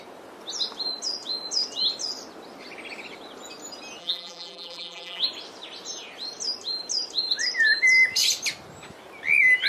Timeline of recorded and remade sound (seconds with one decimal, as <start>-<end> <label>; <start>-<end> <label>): 0.0-4.0 recorded; 4.0-5.2 remade; 5.2-9.7 recorded